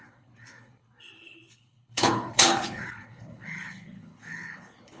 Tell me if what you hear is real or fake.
fake